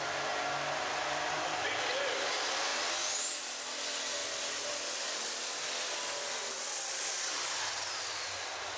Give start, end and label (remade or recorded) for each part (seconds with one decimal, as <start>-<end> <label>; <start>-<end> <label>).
0.0-8.8 recorded